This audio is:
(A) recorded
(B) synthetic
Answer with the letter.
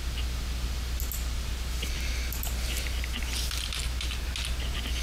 A